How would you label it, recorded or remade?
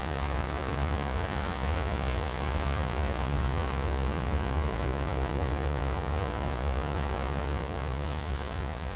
remade